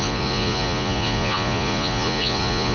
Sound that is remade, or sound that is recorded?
remade